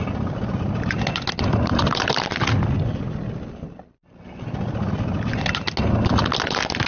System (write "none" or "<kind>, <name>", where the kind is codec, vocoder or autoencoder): none